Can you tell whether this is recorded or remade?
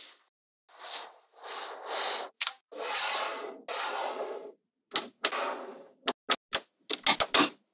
recorded